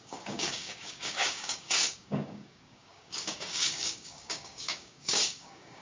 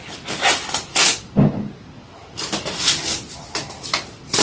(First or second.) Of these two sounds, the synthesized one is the first